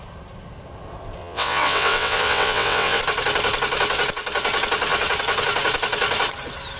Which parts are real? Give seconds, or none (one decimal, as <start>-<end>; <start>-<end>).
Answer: 0.0-1.2; 3.0-6.8